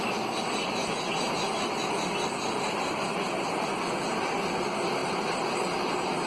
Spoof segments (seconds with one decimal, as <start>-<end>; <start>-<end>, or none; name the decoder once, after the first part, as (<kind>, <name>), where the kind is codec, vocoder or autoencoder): 0.6-1.1 (vocoder, BigVGAN v2); 2.5-3.7; 5.0-5.8